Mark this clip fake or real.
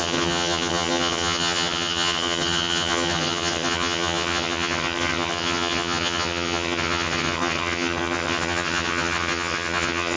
fake